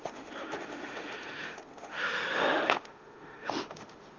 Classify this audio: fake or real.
fake